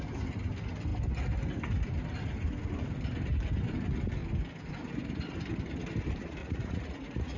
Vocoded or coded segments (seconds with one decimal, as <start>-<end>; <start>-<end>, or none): 6.4-7.4